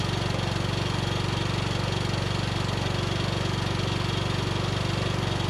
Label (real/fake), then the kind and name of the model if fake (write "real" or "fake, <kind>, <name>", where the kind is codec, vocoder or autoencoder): real